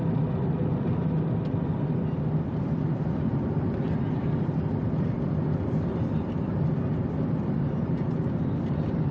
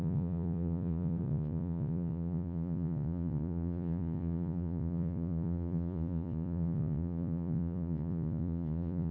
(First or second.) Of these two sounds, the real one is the first